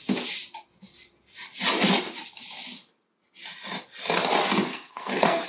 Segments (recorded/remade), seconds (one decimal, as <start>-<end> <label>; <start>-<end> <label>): 0.0-4.7 recorded; 4.7-5.5 remade